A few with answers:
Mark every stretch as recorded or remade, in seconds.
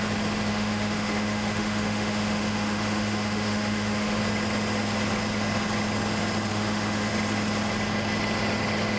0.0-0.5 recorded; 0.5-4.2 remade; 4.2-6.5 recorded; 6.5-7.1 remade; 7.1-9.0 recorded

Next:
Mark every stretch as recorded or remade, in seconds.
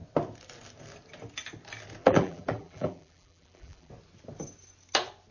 0.0-2.0 recorded; 2.0-3.9 remade; 3.9-5.3 recorded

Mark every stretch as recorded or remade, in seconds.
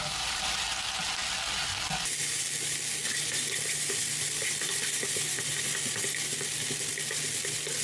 0.0-7.8 recorded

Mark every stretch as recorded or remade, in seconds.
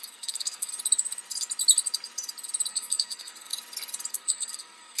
0.0-0.7 remade; 0.7-2.7 recorded; 2.7-3.5 remade; 3.5-4.1 recorded; 4.1-5.0 remade